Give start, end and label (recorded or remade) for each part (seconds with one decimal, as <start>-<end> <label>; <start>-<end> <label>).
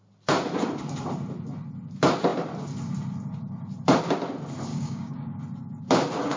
0.0-4.7 recorded; 4.7-5.4 remade; 5.4-6.4 recorded